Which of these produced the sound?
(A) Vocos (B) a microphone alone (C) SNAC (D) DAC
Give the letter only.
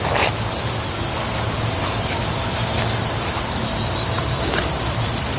B